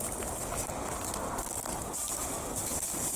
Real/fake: real